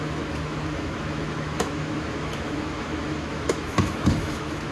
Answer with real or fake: fake